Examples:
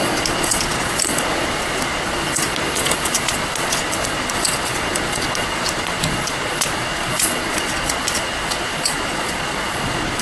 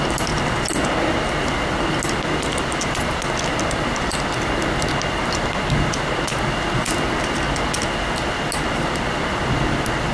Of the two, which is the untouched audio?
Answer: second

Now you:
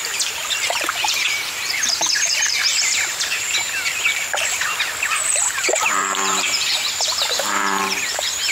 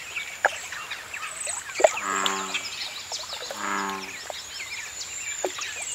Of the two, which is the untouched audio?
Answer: second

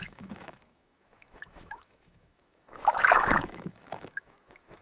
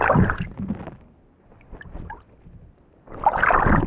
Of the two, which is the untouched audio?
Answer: second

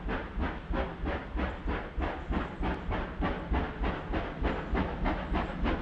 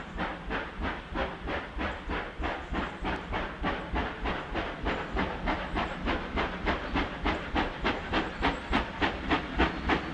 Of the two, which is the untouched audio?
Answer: first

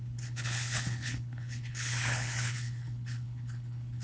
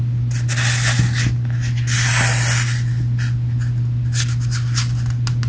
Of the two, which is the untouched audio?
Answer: second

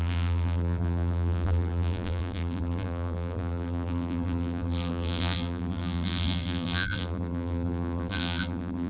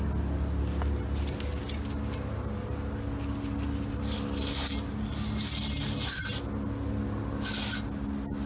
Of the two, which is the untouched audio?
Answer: second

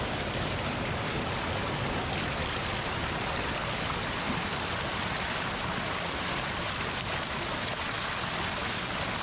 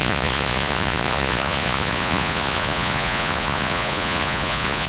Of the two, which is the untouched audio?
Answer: first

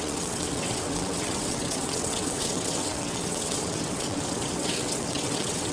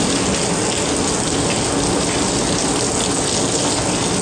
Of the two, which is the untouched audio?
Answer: second